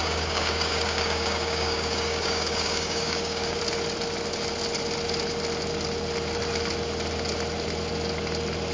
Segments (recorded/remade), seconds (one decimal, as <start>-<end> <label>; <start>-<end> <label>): 0.0-3.6 remade; 3.6-8.7 recorded